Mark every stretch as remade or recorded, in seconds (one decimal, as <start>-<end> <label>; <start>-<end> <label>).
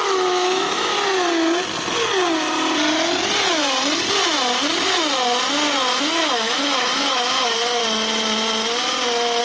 0.0-0.9 remade; 0.9-5.9 recorded; 5.9-7.8 remade; 7.8-9.4 recorded